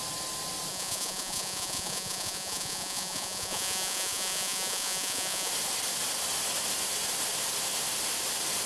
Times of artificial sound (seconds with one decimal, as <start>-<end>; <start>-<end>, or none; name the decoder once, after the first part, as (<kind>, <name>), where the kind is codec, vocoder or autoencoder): 0.7-5.5 (vocoder, Vocos)